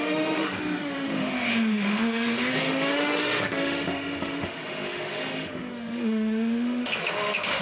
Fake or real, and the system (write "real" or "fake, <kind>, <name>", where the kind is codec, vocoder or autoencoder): fake, autoencoder, DAC-VAE